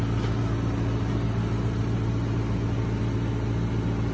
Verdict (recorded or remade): recorded